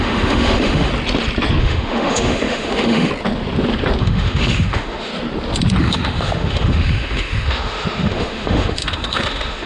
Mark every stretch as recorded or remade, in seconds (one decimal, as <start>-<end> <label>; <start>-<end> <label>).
0.0-0.9 remade; 0.9-1.6 recorded; 1.6-3.1 remade; 3.1-4.0 recorded; 4.0-5.1 remade; 5.1-5.8 recorded; 5.8-9.7 remade